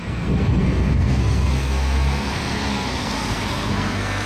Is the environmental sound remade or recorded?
remade